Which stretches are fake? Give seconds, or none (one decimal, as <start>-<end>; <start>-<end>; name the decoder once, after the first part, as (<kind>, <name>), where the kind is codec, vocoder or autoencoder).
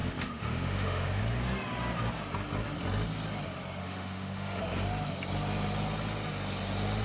0.0-1.2 (autoencoder, DAC-VAE); 3.8-4.6